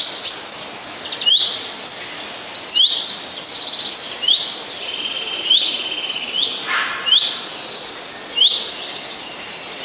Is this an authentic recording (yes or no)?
yes